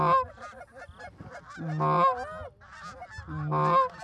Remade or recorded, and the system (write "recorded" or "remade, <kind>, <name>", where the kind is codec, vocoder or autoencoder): recorded